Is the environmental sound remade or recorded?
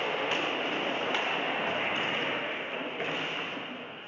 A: recorded